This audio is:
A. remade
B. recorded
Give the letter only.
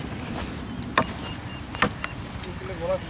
B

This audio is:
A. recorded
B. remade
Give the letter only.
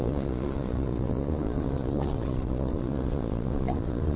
B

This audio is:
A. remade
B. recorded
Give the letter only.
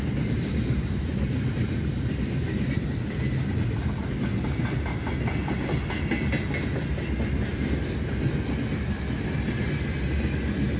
B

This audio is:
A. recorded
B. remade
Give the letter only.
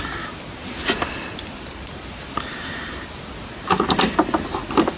A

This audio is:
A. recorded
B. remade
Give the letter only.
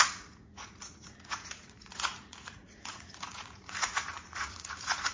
B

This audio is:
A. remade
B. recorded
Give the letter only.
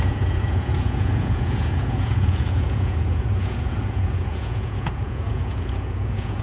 A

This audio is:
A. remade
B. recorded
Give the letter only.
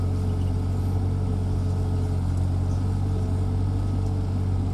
B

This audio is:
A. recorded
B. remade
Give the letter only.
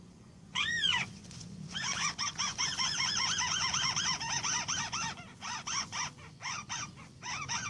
B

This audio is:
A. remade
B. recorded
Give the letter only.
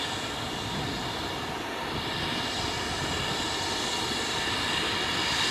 B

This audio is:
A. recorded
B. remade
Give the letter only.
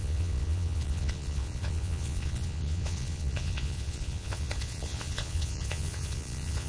B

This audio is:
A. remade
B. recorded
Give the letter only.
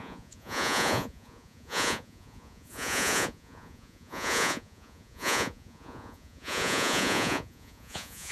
A